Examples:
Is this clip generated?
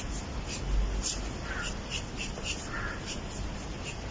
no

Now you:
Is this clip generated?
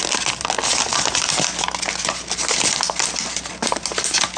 no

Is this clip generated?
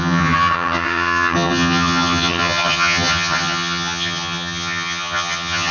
yes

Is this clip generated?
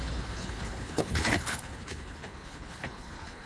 yes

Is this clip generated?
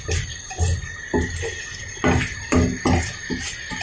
no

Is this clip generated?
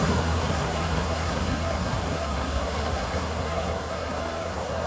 yes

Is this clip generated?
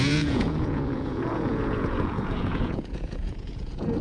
yes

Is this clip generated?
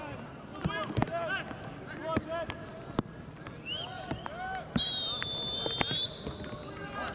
no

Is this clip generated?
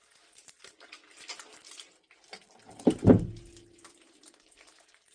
no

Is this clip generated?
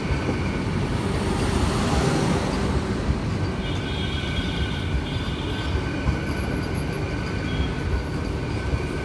no